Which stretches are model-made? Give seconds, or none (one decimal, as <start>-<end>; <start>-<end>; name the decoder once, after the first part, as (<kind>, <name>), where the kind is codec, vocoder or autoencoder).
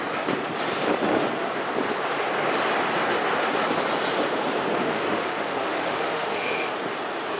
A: 4.8-6.7 (autoencoder, DAC-VAE)